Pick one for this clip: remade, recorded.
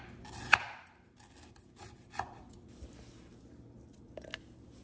recorded